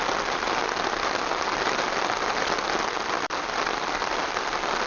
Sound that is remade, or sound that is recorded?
recorded